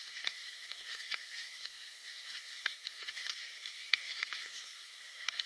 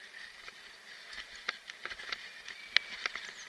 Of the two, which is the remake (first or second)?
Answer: first